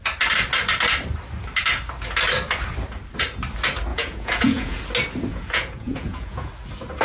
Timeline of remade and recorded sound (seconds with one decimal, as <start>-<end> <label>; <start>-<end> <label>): 0.0-3.9 recorded; 3.9-4.8 remade; 4.8-5.3 recorded; 5.3-6.5 remade; 6.5-7.0 recorded